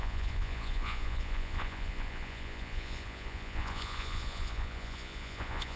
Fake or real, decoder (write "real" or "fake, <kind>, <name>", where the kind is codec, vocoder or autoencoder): fake, vocoder, Vocos